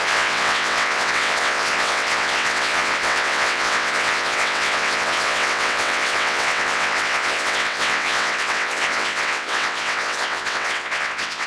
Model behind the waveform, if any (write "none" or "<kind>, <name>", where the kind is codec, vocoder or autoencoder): vocoder, WaveNeXt